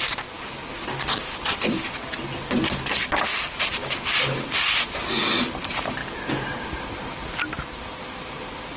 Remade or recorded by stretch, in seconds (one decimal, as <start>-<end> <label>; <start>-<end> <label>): 0.0-8.8 recorded

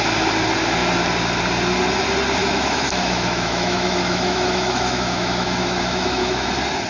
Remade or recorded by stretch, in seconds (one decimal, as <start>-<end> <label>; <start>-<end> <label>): 0.0-2.4 recorded; 2.4-6.5 remade; 6.5-6.9 recorded

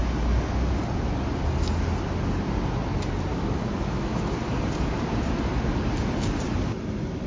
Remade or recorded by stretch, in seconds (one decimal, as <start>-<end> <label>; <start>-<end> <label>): 0.0-3.3 recorded; 3.3-4.3 remade; 4.3-7.3 recorded

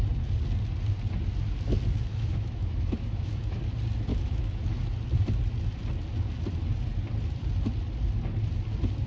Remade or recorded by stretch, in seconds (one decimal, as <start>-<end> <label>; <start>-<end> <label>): 0.0-1.9 recorded; 1.9-3.6 remade; 3.6-4.1 recorded; 4.1-4.8 remade; 4.8-9.1 recorded

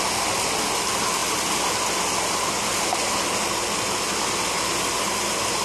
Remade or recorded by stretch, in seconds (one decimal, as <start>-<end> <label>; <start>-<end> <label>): 0.0-5.6 recorded

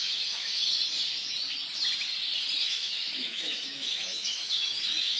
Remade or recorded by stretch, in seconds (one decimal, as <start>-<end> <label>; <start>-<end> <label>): 0.0-0.6 remade; 0.6-2.6 recorded; 2.6-5.2 remade